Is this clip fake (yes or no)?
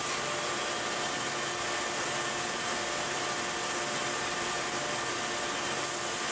no